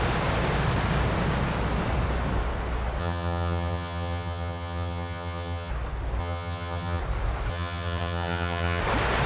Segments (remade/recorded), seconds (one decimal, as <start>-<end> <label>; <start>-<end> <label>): 0.0-3.0 recorded; 3.0-5.7 remade; 5.7-6.2 recorded; 6.2-7.0 remade; 7.0-7.5 recorded; 7.5-8.8 remade; 8.8-9.3 recorded